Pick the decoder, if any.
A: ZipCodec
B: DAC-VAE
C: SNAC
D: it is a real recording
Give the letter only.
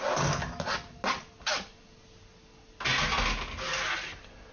D